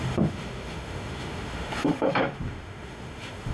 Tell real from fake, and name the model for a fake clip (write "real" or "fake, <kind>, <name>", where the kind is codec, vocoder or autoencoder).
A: fake, autoencoder, DAC-VAE